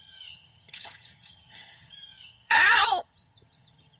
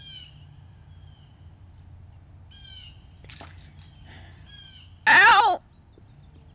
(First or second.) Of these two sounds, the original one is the second